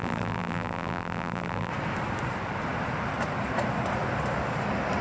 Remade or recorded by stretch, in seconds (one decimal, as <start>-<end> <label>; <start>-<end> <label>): 0.0-1.7 remade; 1.7-5.0 recorded